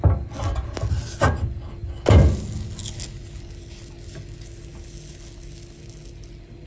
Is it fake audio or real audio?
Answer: real